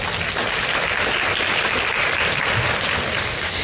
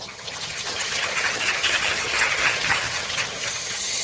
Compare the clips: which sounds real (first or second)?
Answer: first